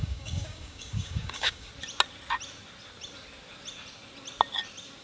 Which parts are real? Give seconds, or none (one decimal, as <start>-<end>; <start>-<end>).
1.7-5.0